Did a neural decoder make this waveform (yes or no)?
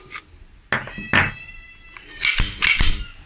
no